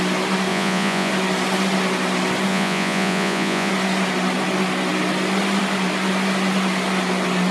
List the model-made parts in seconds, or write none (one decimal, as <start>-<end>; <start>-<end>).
0.5-1.1; 2.5-3.7